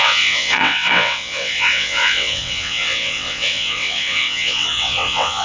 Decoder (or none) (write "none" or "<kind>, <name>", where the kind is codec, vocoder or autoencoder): vocoder, WaveNeXt